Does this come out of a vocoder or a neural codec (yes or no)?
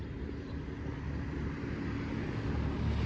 no